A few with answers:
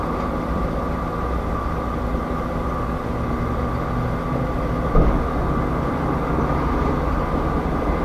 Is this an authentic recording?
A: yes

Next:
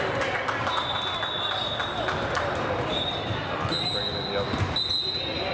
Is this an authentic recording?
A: yes